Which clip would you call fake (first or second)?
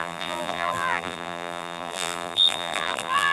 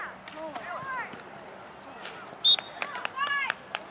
first